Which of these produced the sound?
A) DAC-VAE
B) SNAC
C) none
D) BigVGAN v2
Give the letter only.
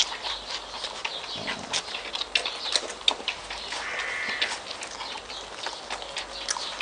C